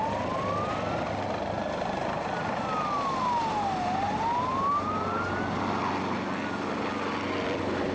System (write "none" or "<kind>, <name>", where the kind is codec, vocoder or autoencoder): none